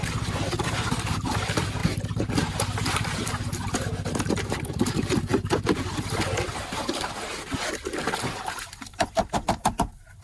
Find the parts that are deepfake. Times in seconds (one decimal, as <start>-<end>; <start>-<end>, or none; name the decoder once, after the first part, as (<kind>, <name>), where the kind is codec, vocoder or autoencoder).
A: 0.0-1.8 (vocoder, BigVGAN v2); 4.3-10.2